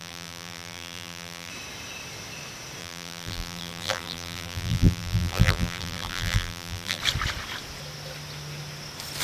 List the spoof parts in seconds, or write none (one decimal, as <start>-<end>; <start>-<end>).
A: 0.0-1.5; 2.8-7.0